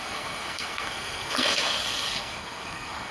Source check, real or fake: fake